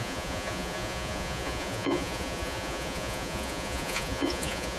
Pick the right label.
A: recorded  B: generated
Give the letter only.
B